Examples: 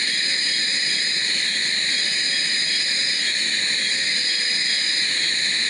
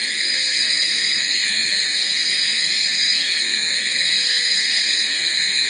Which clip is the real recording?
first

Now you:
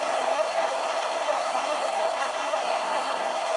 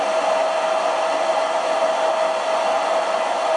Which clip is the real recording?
second